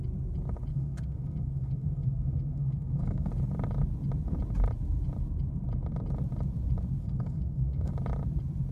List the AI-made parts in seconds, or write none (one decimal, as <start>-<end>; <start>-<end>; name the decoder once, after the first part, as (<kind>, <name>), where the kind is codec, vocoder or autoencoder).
0.7-3.3 (codec, SNAC); 7.0-7.9